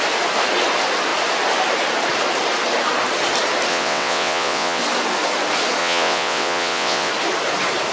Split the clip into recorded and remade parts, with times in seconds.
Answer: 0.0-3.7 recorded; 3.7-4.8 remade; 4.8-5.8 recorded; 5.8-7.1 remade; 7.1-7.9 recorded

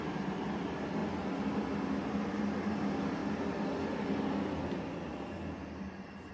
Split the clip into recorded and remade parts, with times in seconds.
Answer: 0.0-1.0 remade; 1.0-2.3 recorded; 2.3-3.2 remade; 3.2-6.3 recorded

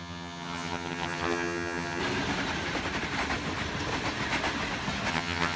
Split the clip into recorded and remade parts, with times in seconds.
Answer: 0.0-2.0 remade; 2.0-5.1 recorded; 5.1-5.6 remade

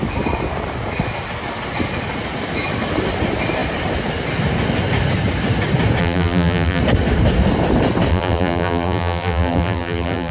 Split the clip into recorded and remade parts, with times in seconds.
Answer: 0.0-6.0 recorded; 6.0-6.8 remade; 6.8-8.1 recorded; 8.1-10.3 remade